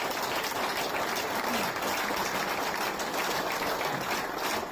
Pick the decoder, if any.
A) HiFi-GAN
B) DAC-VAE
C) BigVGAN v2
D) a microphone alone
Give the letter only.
D